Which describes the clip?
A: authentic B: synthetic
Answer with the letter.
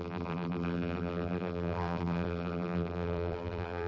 B